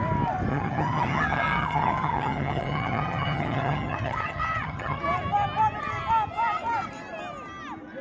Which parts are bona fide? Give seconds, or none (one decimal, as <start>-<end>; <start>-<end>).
0.0-0.5; 5.0-8.0